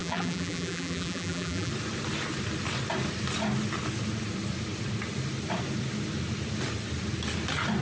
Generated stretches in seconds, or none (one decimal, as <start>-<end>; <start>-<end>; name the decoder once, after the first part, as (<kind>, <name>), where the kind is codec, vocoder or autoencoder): 0.0-1.7 (vocoder, BigVGAN v2)

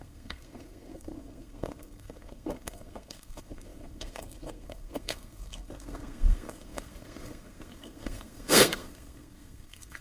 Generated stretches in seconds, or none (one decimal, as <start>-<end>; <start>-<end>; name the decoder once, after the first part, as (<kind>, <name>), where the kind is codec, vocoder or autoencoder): 0.0-10.0 (codec, SNAC)

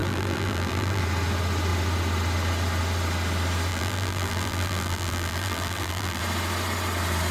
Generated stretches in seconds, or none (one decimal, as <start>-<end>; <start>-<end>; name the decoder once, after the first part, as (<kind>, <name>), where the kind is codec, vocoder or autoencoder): 0.0-1.0 (vocoder, BigVGAN v2); 3.7-6.2

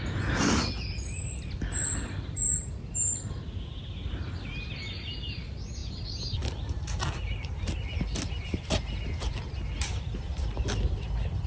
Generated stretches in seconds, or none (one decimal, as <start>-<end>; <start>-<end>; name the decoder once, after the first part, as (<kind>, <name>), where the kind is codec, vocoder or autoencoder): none

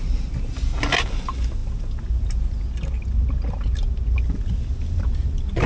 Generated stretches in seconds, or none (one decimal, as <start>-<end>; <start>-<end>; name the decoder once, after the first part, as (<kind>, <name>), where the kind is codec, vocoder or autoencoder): none

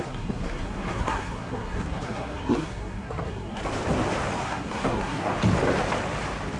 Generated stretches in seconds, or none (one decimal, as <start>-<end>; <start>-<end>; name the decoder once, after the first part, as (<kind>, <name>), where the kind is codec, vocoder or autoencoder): 0.0-3.6 (codec, SNAC); 4.4-5.3

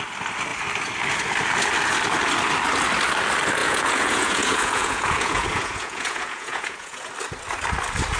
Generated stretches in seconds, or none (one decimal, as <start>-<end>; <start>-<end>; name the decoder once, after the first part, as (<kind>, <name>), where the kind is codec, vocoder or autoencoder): 3.6-7.1 (vocoder, Vocos)